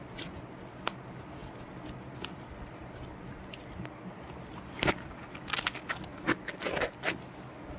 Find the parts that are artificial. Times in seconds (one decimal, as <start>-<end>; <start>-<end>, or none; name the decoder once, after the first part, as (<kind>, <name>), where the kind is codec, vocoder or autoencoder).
none